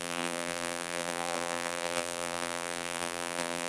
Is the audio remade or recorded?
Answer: remade